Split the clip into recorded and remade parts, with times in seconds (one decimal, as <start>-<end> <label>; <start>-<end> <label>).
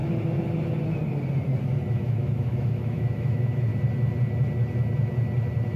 0.0-1.9 recorded; 1.9-3.7 remade; 3.7-5.8 recorded